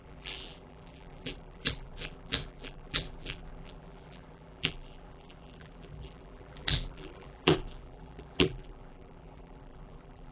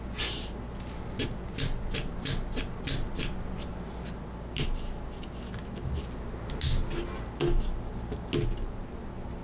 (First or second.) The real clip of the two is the second